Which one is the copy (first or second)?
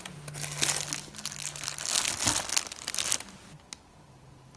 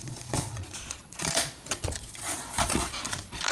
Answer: second